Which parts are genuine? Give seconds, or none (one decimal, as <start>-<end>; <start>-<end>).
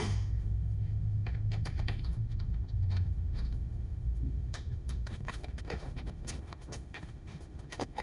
none